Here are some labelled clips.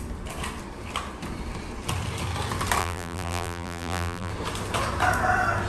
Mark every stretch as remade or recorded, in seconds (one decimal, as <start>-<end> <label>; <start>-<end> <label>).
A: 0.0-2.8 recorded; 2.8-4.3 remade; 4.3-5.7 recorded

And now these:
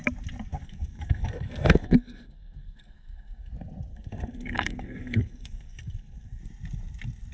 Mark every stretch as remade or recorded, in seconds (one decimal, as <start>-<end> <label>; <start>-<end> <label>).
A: 0.0-0.5 recorded; 0.5-3.5 remade; 3.5-3.9 recorded; 3.9-6.4 remade; 6.4-7.3 recorded

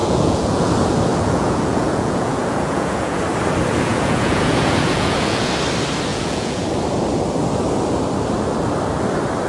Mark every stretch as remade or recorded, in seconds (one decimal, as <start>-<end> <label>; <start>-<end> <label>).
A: 0.0-0.7 remade; 0.7-1.1 recorded; 1.1-3.2 remade; 3.2-3.9 recorded; 3.9-5.5 remade; 5.5-6.1 recorded; 6.1-6.6 remade; 6.6-9.5 recorded

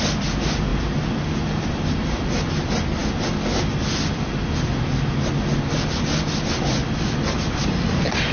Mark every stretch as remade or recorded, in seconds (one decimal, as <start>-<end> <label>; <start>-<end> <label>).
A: 0.0-8.3 recorded